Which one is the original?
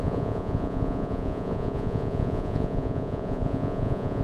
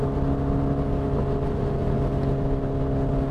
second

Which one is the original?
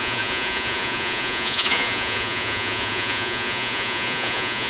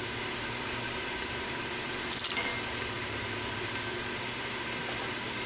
second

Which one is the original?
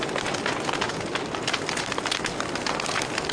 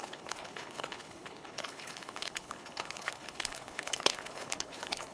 first